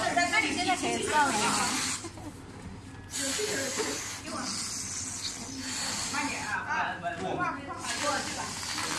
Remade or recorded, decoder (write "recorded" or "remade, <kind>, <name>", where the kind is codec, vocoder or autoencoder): recorded